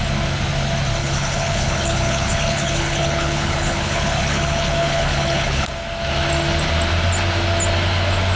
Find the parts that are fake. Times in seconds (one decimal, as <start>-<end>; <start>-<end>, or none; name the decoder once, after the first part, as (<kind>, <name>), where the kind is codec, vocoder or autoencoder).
1.0-5.7 (codec, HILCodec)